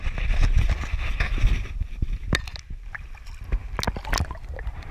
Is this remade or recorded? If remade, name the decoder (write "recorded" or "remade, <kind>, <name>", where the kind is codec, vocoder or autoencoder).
recorded